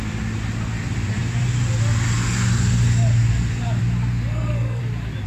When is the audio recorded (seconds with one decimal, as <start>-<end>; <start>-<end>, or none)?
0.0-4.3; 4.8-5.3